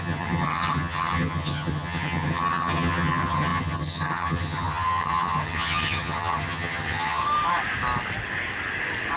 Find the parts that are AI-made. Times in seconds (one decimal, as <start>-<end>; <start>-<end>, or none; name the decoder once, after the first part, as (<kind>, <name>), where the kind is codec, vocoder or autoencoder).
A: 0.0-7.2 (vocoder, HiFi-GAN)